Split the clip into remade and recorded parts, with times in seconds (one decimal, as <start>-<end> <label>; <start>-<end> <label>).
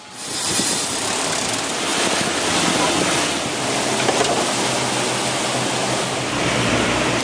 0.0-7.2 recorded